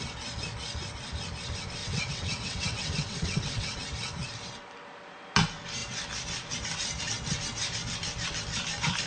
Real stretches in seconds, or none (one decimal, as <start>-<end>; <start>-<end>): 0.0-1.8; 3.8-9.1